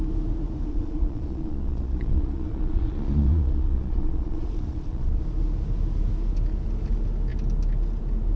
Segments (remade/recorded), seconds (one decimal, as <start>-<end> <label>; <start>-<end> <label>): 0.0-0.7 recorded; 0.7-5.2 remade; 5.2-8.4 recorded